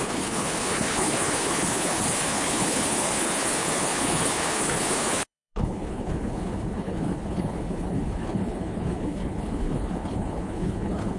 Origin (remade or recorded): remade